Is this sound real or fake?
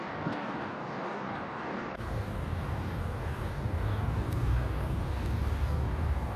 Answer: fake